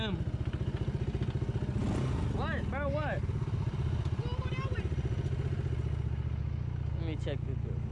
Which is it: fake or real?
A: real